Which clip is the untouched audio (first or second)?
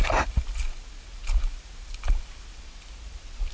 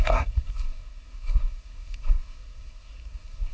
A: first